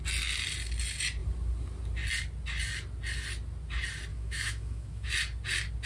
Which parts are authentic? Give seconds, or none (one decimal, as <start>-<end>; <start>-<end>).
0.0-4.1; 5.1-5.9